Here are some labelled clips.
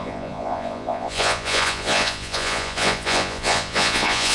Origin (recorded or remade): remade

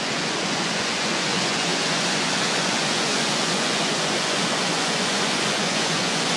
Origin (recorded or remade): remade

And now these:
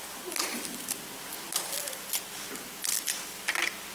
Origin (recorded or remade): recorded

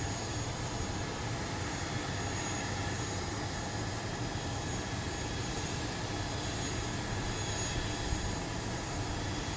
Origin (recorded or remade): recorded